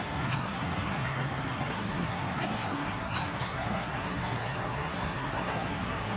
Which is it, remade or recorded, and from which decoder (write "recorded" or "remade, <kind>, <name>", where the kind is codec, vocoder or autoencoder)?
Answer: remade, codec, SNAC